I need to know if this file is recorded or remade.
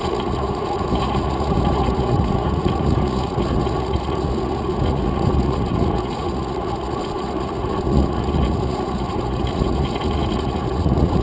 remade